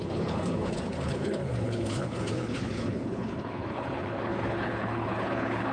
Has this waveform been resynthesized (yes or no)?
yes